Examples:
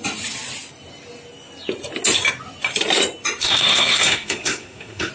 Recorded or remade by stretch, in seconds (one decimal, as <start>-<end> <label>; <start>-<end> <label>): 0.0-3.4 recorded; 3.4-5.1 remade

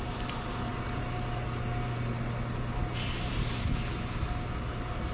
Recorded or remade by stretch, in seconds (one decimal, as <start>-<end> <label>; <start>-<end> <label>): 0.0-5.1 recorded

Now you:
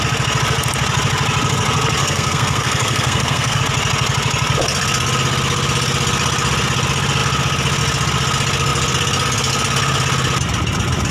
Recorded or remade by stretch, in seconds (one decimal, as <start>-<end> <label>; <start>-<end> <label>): 0.0-2.0 recorded; 2.0-3.6 remade; 3.6-11.1 recorded

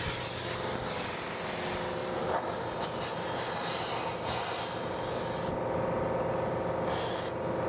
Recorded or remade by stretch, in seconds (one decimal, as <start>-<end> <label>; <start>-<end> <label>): 0.0-7.7 recorded

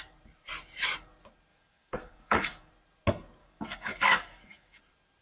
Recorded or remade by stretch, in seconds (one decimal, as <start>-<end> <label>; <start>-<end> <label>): 0.0-1.5 recorded; 1.5-2.7 remade; 2.7-3.4 recorded; 3.4-4.8 remade; 4.8-5.2 recorded